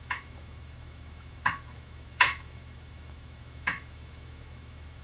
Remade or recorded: remade